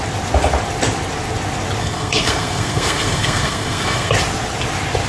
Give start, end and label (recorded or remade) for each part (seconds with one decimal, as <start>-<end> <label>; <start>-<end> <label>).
0.0-1.8 recorded; 1.8-4.1 remade; 4.1-5.1 recorded